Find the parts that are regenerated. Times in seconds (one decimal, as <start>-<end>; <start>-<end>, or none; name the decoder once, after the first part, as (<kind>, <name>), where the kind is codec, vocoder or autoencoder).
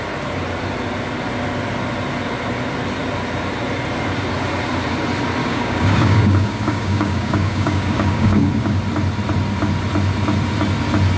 5.4-8.8 (codec, DAC)